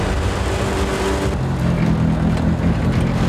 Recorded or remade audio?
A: recorded